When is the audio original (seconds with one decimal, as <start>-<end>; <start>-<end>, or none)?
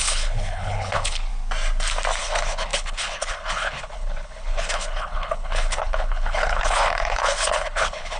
1.3-2.2